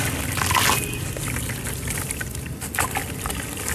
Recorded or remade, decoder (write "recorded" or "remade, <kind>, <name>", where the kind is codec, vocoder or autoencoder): recorded